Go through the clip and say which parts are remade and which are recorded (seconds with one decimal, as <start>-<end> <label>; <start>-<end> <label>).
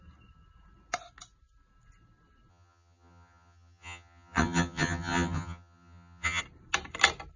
0.0-2.5 recorded; 2.5-6.4 remade; 6.4-7.4 recorded